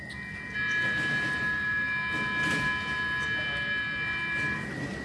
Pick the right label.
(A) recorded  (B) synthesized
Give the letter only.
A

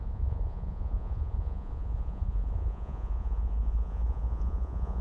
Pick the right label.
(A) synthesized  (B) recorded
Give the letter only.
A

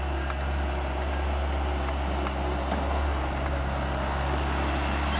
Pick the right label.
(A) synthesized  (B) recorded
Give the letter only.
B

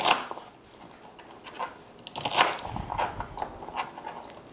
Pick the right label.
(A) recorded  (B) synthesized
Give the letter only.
A